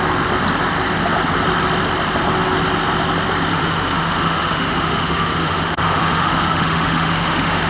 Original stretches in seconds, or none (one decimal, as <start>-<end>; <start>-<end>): 0.0-3.5